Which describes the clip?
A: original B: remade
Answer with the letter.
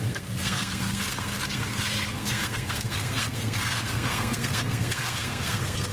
B